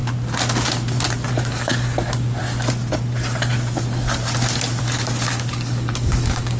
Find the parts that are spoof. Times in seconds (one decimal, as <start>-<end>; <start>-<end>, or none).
1.3-2.4; 4.8-6.6